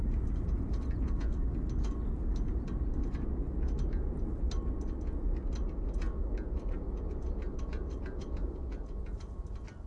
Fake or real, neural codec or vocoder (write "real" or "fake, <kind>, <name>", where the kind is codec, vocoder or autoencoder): real